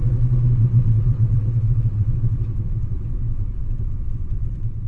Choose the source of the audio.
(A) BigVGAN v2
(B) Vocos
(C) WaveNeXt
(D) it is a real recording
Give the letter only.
C